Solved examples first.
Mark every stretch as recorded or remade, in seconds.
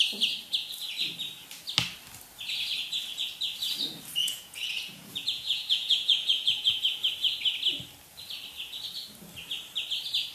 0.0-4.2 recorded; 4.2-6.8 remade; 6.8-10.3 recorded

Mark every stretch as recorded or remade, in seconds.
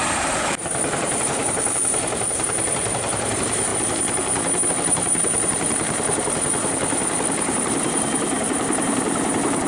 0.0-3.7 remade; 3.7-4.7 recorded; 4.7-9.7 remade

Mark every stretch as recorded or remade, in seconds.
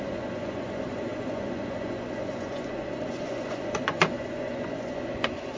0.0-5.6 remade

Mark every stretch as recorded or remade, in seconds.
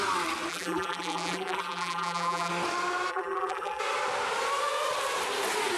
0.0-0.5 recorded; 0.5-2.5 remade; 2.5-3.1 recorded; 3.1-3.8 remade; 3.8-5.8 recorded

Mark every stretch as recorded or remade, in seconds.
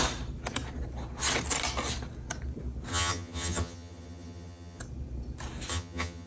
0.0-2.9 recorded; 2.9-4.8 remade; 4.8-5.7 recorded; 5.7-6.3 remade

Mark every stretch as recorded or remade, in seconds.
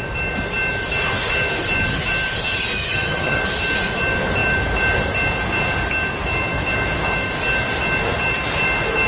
0.0-2.8 recorded; 2.8-3.4 remade; 3.4-9.1 recorded